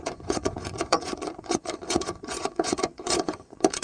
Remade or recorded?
remade